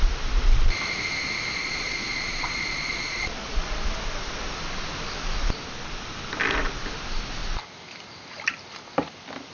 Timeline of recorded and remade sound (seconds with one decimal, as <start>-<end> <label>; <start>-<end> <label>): 0.0-1.6 recorded; 1.6-3.6 remade; 3.6-9.5 recorded